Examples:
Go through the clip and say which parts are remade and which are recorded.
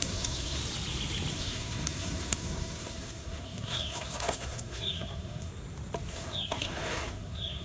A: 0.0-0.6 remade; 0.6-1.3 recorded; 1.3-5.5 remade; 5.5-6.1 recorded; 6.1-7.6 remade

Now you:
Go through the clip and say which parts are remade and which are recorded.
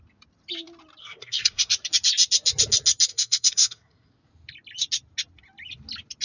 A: 0.0-1.0 recorded; 1.0-1.7 remade; 1.7-3.1 recorded; 3.1-4.1 remade; 4.1-6.2 recorded